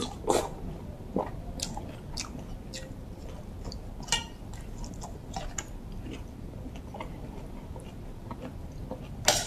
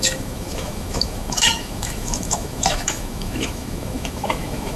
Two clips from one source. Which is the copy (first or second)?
second